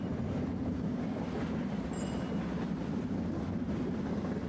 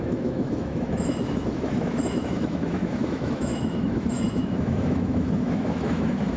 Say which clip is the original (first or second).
first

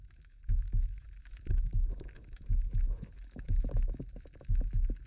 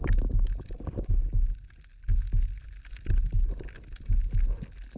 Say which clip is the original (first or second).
second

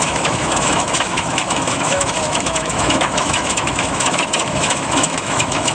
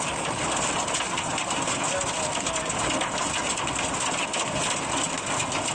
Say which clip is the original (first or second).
second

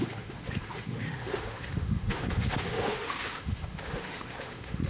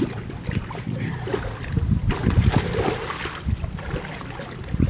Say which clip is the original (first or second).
second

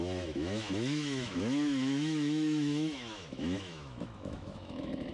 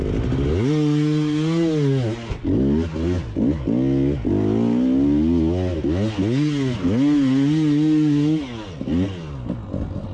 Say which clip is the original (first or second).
second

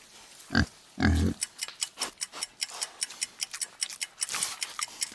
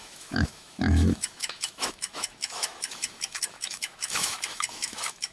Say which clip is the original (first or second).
first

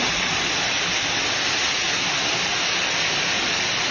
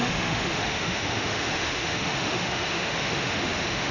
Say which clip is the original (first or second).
first